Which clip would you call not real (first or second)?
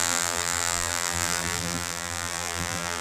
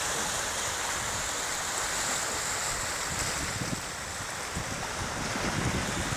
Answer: first